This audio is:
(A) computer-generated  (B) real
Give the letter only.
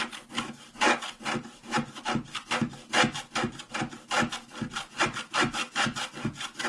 B